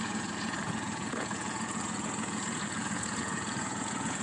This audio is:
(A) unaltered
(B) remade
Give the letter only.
B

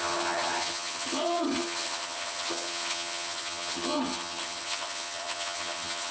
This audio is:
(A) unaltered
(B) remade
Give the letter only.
B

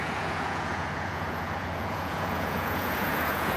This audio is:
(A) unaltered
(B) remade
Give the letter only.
B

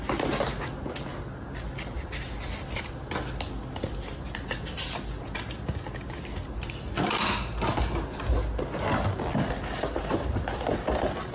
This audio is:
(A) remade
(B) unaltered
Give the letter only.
B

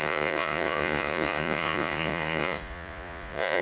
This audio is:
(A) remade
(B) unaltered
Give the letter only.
A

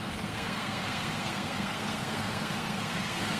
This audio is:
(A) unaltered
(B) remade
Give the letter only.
B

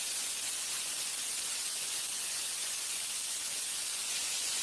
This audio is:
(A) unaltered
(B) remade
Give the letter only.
B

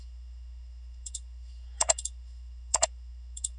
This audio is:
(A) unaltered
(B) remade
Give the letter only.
B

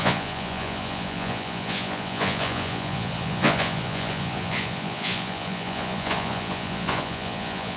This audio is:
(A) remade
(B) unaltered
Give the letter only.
A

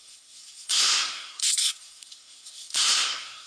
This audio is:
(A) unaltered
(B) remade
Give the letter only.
B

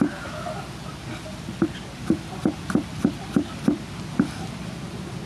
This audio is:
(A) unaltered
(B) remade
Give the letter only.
A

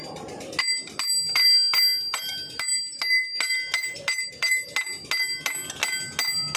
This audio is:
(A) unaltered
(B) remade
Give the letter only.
A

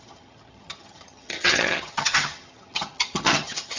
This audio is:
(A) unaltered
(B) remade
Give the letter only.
B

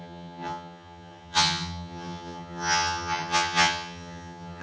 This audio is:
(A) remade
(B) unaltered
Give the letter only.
A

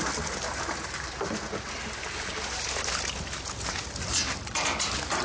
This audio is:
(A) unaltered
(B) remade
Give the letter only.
A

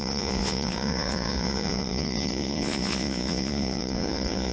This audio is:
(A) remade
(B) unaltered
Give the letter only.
A